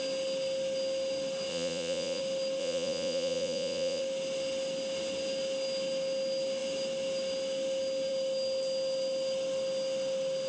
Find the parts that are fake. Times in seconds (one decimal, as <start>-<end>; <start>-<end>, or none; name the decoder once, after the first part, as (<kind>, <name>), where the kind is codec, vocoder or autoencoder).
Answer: 1.5-2.2 (vocoder, Vocos); 2.6-4.0